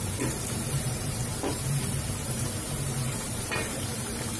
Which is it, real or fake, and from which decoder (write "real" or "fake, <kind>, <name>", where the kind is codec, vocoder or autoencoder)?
fake, vocoder, BigVGAN v2